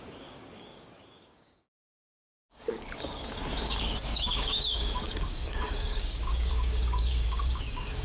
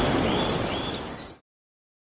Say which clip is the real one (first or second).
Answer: second